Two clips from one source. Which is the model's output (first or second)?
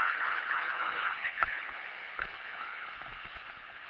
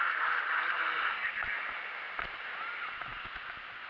first